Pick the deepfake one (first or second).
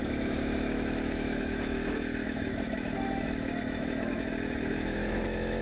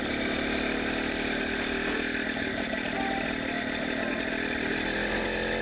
first